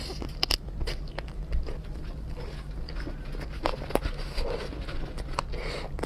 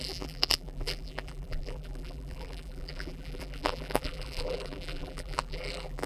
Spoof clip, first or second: second